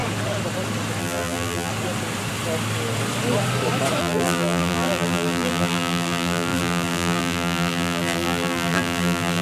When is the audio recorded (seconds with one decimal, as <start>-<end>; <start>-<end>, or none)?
0.0-1.0; 1.7-4.0

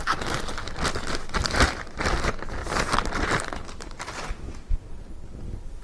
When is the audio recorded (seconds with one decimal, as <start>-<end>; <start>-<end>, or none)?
0.0-1.4; 2.1-2.6; 4.9-5.8

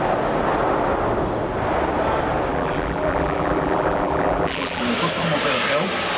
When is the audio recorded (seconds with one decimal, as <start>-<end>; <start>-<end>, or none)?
0.0-2.5; 4.8-6.2

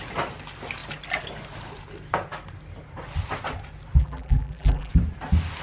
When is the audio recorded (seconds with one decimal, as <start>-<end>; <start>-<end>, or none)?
0.0-4.0; 4.9-5.6

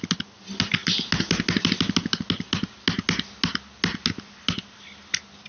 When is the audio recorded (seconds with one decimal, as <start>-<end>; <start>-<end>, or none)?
0.0-5.5